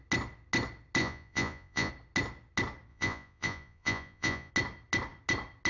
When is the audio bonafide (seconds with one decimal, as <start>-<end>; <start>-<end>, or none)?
0.0-1.0; 1.9-2.9; 4.5-5.7